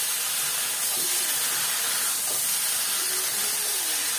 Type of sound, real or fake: real